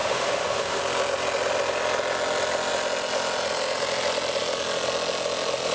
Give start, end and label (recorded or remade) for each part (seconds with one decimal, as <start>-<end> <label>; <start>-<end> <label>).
0.0-0.8 remade; 0.8-5.7 recorded